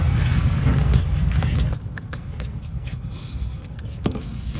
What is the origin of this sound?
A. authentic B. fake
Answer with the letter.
B